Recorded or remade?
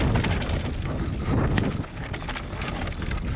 recorded